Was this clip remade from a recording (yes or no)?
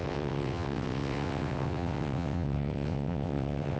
yes